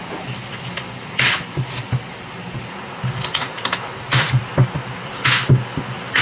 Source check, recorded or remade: recorded